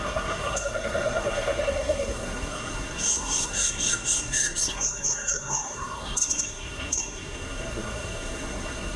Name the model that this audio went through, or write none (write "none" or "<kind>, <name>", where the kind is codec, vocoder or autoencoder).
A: codec, SNAC